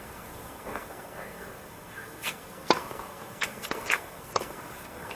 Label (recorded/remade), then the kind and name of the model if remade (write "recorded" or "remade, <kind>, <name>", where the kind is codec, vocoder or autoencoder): remade, codec, SNAC